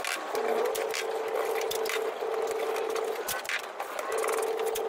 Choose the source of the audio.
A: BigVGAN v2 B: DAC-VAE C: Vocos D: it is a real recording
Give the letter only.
D